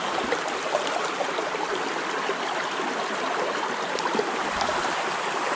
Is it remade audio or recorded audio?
recorded